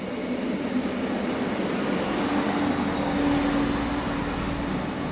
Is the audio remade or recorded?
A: recorded